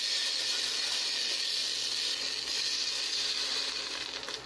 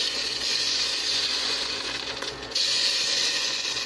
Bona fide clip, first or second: first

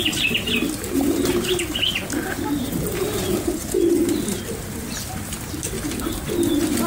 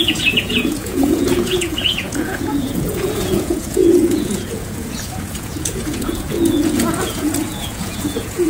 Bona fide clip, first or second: first